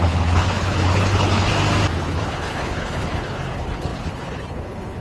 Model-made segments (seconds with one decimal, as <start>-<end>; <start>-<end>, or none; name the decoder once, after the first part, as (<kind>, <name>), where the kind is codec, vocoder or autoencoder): 0.0-1.5 (codec, HILCodec); 2.0-5.0